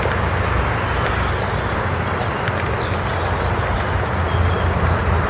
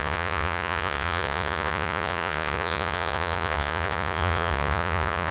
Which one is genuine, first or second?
first